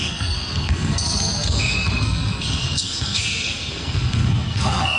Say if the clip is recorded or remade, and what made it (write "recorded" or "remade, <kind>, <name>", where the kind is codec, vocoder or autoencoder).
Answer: remade, codec, SNAC